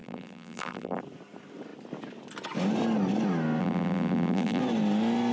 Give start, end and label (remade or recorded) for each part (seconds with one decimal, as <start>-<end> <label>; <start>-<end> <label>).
0.0-1.0 remade; 1.0-3.6 recorded; 3.6-4.6 remade; 4.6-5.3 recorded